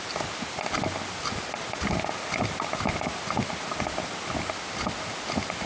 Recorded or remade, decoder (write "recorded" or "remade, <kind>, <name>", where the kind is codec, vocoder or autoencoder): recorded